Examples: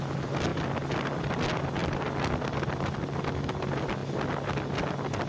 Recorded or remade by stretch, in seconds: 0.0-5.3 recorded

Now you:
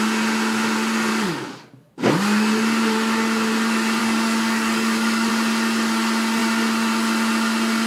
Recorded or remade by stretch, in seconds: 0.0-1.1 recorded; 1.1-1.9 remade; 1.9-4.0 recorded; 4.0-5.3 remade; 5.3-7.9 recorded

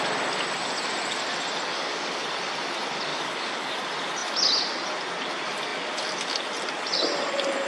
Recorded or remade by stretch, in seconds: 0.0-1.7 recorded; 1.7-2.2 remade; 2.2-3.1 recorded; 3.1-3.7 remade; 3.7-7.7 recorded

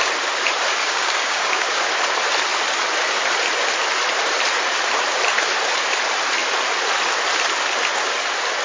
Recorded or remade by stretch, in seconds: 0.0-0.8 recorded; 0.8-1.8 remade; 1.8-8.6 recorded

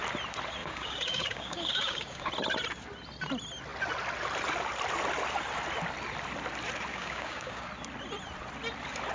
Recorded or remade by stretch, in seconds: 0.0-0.6 recorded; 0.6-2.3 remade; 2.3-6.9 recorded; 6.9-7.7 remade; 7.7-9.1 recorded

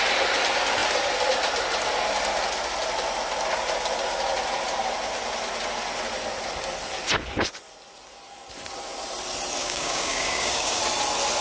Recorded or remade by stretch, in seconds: 0.0-9.6 recorded; 9.6-10.8 remade; 10.8-11.4 recorded

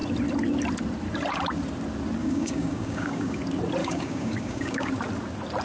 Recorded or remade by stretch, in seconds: 0.0-2.2 recorded; 2.2-3.4 remade; 3.4-3.8 recorded; 3.8-4.9 remade; 4.9-5.6 recorded